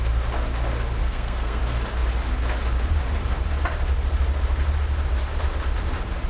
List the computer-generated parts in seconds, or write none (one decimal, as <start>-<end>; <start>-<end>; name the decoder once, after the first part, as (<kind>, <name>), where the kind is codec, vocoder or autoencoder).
1.0-1.6 (codec, SNAC)